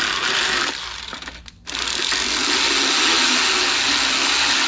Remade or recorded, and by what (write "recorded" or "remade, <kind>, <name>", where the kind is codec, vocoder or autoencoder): recorded